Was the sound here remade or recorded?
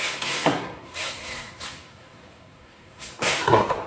remade